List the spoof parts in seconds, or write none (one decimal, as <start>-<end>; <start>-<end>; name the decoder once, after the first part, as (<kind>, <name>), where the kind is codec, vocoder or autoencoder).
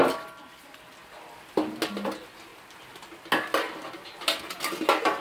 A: none